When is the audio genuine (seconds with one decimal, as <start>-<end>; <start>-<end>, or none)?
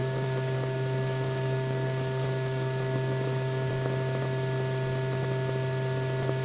3.7-6.4